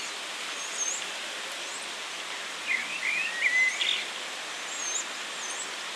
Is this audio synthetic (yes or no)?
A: no